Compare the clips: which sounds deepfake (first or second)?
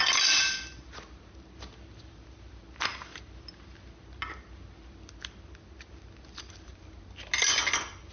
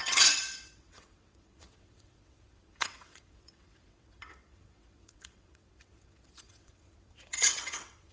second